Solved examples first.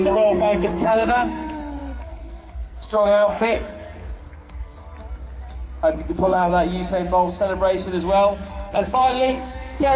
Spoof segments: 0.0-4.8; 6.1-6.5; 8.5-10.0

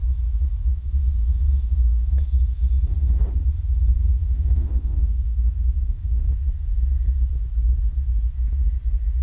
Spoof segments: 0.7-2.7; 3.9-6.3

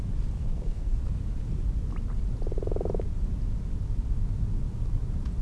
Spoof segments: 0.4-1.0

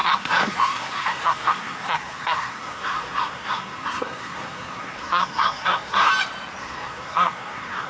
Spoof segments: 0.0-6.1; 6.6-7.9